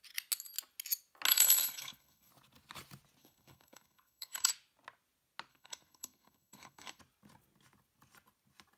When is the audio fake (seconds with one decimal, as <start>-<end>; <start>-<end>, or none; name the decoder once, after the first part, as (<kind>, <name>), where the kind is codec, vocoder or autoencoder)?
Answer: 1.3-2.3 (codec, SNAC); 3.2-4.5; 5.5-7.0